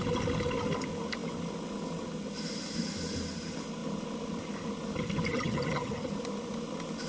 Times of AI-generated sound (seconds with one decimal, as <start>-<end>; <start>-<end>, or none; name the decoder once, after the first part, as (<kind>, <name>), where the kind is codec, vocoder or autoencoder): 5.3-6.1 (vocoder, HiFi-GAN)